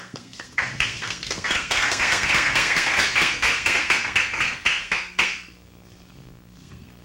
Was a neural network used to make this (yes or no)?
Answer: yes